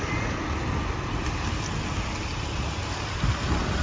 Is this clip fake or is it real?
real